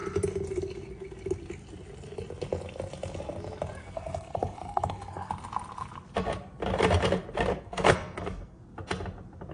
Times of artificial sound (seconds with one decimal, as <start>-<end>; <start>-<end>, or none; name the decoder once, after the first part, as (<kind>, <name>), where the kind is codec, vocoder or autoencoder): 3.8-5.3 (codec, SNAC); 7.5-8.6